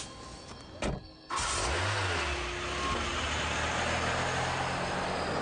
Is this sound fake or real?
real